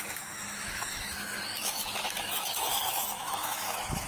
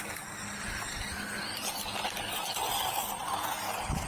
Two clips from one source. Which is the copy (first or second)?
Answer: first